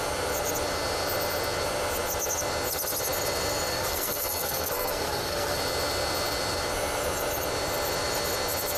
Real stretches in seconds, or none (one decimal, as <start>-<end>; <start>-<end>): 0.0-3.7; 5.6-8.8